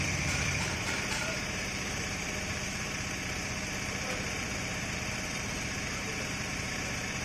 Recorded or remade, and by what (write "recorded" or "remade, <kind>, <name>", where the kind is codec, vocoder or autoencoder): remade, vocoder, BigVGAN v2